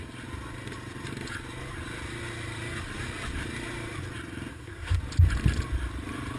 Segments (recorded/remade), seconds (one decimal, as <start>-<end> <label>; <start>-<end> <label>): 0.0-4.5 recorded; 4.5-5.0 remade; 5.0-6.4 recorded